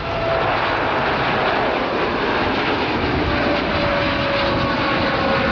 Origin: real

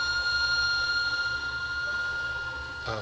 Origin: real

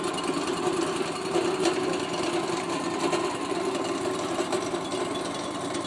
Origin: fake